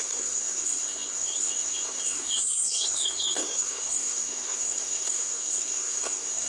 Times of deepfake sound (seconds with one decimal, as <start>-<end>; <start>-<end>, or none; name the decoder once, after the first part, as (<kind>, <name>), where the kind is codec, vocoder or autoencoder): 0.0-6.5 (codec, SNAC)